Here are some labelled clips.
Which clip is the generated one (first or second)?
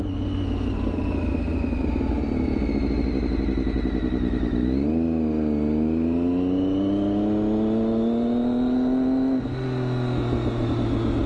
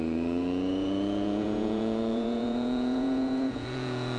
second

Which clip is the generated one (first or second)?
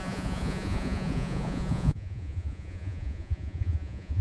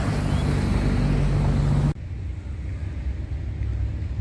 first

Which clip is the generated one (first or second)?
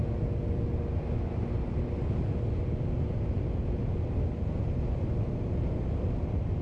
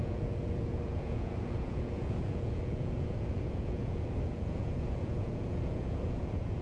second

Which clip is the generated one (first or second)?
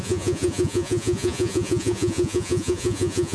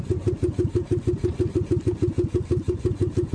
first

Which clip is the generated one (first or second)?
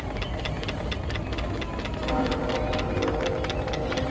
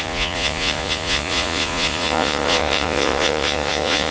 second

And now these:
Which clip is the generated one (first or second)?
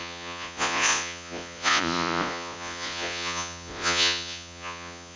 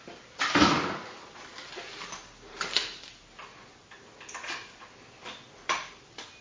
first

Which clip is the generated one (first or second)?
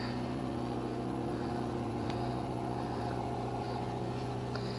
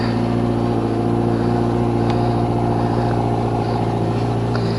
first